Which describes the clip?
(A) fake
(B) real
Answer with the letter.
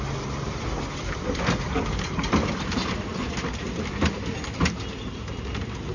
B